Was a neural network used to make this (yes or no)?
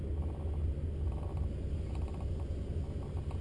no